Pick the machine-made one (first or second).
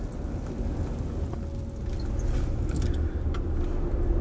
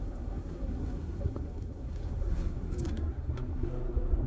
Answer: second